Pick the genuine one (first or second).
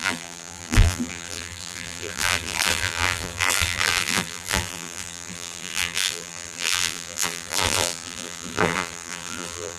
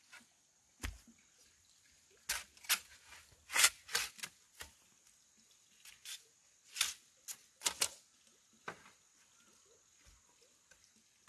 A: second